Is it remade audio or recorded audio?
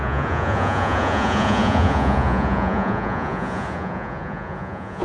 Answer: remade